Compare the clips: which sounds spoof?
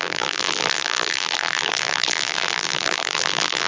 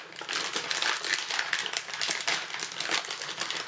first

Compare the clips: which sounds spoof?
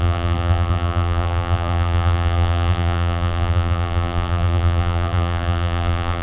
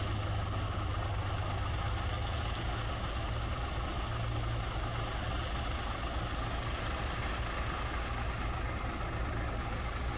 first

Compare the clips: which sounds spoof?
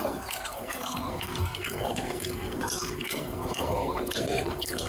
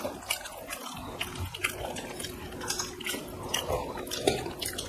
first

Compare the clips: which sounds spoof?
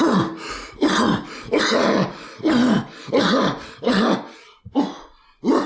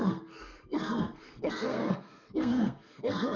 second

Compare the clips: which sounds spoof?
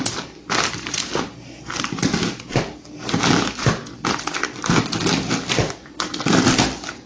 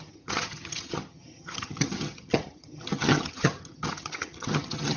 second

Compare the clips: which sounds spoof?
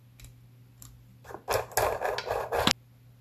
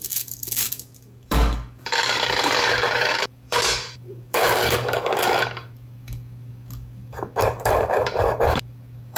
second